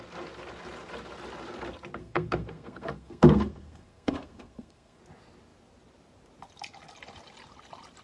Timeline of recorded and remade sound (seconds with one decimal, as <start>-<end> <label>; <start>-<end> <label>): 0.0-2.0 recorded; 2.0-5.0 remade; 5.0-8.0 recorded